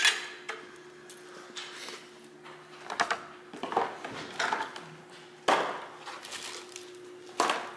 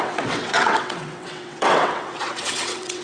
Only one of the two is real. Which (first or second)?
first